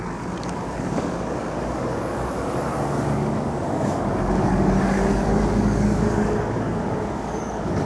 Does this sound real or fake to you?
fake